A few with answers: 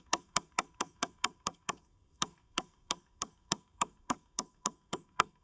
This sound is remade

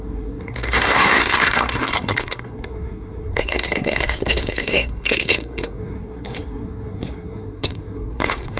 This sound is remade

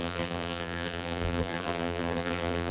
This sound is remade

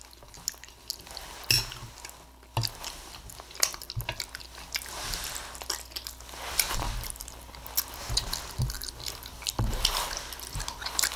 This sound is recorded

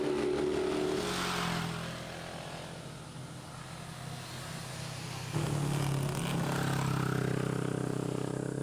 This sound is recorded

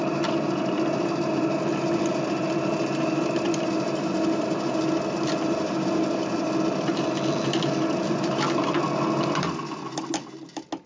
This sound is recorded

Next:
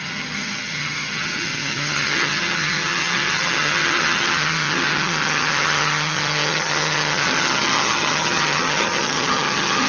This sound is remade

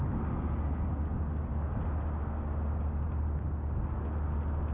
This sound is recorded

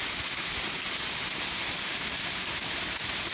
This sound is remade